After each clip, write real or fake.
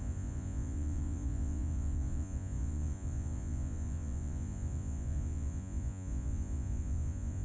fake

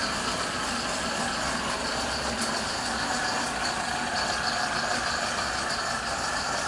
real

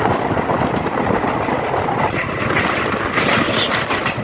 real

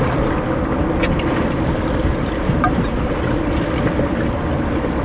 real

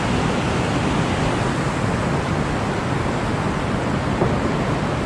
real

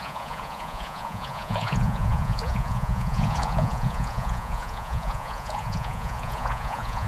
fake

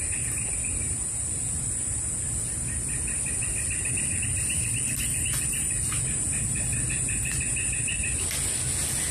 real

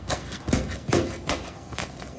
fake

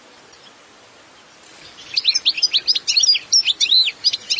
real